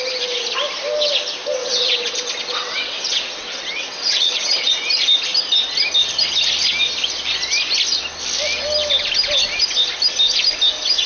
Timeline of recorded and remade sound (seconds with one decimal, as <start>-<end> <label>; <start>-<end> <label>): 0.0-1.6 recorded; 1.6-4.7 remade; 4.7-11.1 recorded